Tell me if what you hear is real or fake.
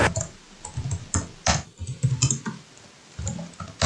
real